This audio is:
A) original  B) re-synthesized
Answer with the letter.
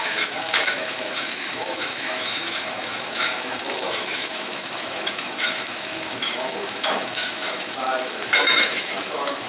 B